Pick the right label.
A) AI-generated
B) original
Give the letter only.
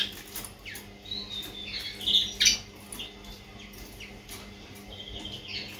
B